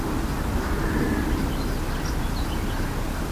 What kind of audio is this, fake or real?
real